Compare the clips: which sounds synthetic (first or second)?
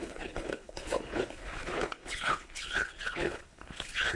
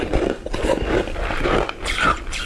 first